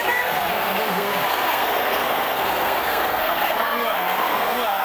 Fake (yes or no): yes